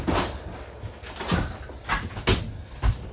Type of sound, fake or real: real